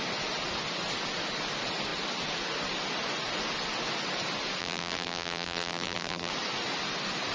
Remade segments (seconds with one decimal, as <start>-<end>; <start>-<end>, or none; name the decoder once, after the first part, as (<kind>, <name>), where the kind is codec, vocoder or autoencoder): 4.6-6.3 (vocoder, BigVGAN v2)